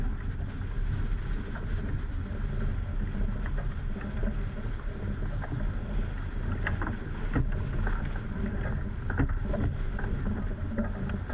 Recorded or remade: recorded